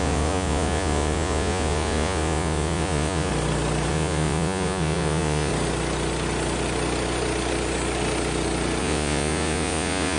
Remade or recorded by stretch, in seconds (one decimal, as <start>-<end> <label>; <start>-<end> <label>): 0.0-3.3 remade; 3.3-3.9 recorded; 3.9-5.5 remade; 5.5-8.8 recorded; 8.8-10.2 remade

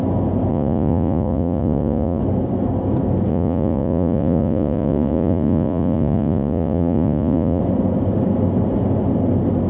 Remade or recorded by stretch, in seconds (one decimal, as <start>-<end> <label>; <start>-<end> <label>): 0.0-0.5 recorded; 0.5-2.2 remade; 2.2-3.3 recorded; 3.3-7.6 remade; 7.6-9.7 recorded